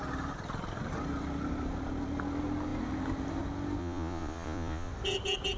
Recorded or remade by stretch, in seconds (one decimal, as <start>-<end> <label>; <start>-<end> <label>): 0.0-3.8 recorded; 3.8-4.9 remade; 4.9-5.6 recorded